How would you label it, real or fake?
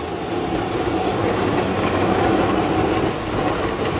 real